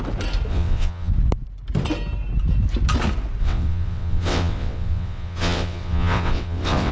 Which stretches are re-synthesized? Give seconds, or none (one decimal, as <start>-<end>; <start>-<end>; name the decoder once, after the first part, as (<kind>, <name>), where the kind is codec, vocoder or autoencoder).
0.5-1.1 (vocoder, WaveNeXt); 3.4-6.9